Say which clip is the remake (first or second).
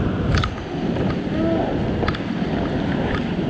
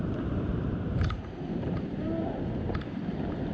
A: second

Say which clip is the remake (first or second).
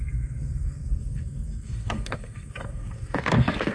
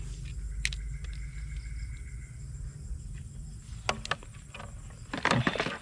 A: first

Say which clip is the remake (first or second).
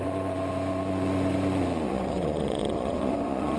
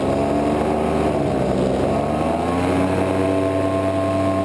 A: first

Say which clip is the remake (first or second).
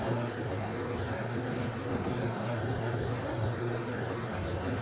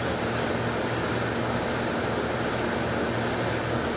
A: first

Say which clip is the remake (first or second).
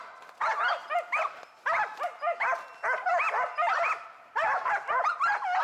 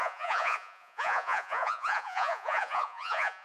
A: second